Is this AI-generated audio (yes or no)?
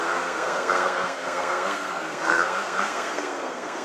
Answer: yes